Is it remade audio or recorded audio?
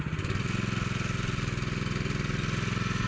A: recorded